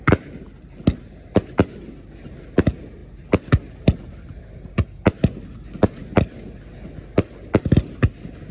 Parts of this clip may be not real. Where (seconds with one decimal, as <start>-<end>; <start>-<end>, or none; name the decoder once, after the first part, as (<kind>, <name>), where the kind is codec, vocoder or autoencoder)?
none